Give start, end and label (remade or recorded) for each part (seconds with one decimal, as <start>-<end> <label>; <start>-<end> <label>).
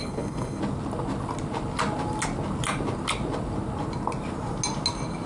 0.0-0.6 remade; 0.6-5.3 recorded